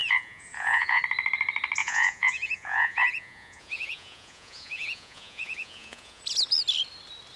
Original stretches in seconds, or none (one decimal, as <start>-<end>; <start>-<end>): 1.0-1.8; 6.2-7.4